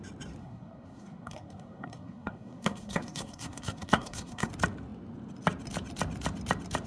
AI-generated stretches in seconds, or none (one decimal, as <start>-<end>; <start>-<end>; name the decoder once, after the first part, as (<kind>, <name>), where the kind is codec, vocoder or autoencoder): 0.4-4.5 (codec, SNAC)